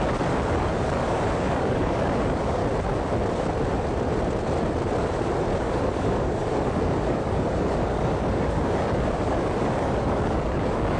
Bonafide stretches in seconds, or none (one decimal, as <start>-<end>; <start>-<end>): 2.6-5.6